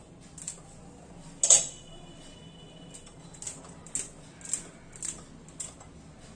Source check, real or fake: real